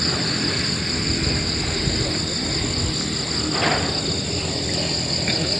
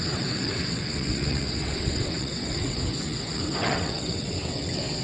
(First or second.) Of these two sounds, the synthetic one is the second